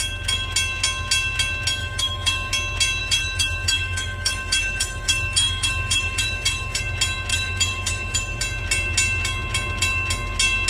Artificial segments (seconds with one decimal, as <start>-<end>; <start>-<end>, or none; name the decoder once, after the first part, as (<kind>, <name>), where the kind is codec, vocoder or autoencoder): 1.8-2.5 (autoencoder, DAC-VAE); 3.0-6.8; 7.3-8.4